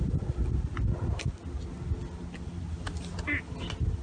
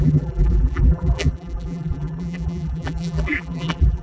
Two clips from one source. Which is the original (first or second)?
first